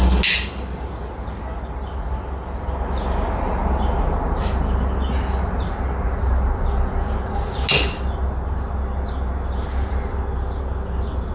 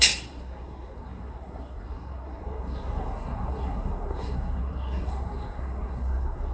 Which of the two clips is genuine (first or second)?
first